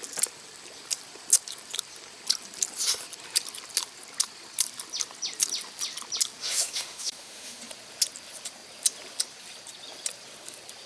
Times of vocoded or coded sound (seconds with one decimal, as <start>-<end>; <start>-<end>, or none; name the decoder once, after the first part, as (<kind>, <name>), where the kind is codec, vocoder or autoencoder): 6.4-7.6 (autoencoder, DAC-VAE)